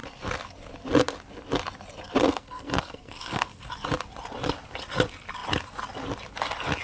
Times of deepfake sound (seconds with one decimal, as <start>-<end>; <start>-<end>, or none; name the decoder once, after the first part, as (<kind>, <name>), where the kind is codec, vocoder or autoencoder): 2.2-3.6 (codec, SNAC)